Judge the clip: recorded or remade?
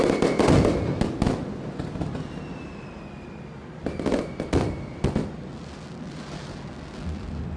recorded